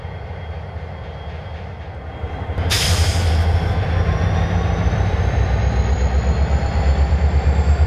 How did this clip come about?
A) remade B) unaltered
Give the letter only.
A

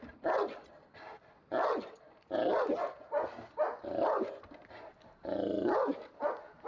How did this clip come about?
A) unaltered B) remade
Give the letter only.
A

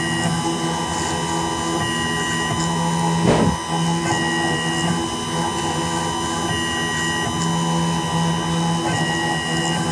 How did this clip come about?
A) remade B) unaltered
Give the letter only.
B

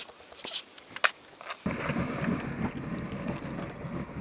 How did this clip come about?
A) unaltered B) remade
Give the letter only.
A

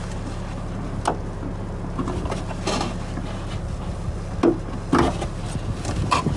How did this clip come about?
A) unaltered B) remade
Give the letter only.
A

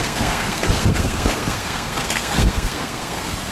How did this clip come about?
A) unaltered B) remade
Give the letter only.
B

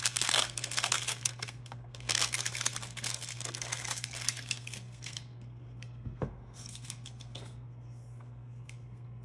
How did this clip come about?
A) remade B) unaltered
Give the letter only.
A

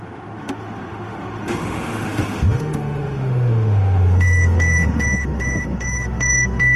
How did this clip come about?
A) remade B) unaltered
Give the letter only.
A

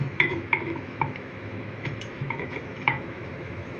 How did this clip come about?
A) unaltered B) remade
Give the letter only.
B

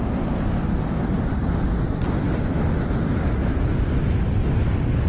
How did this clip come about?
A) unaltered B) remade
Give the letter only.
A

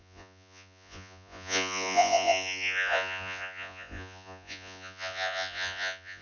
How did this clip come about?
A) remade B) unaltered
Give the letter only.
A